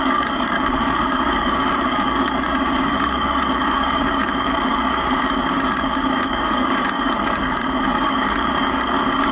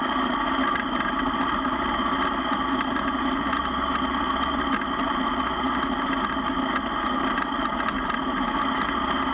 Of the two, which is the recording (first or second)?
second